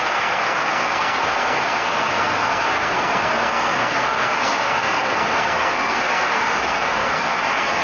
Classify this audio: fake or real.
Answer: fake